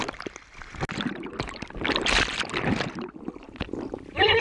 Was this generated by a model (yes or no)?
no